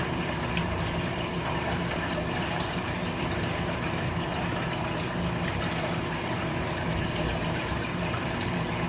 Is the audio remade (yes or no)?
yes